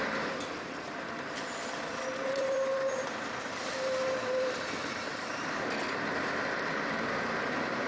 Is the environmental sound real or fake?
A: fake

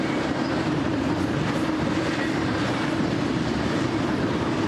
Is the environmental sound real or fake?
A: fake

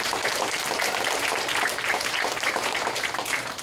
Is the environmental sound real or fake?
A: fake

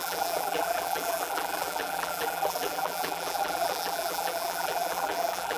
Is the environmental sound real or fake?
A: fake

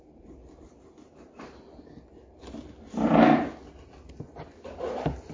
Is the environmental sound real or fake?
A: real